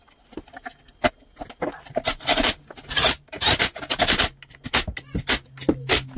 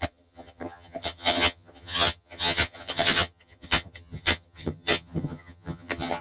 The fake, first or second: second